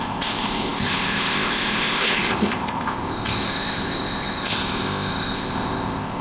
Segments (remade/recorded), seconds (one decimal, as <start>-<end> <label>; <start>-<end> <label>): 0.0-6.2 remade